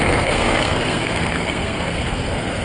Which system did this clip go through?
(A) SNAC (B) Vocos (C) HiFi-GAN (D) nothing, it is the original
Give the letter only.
A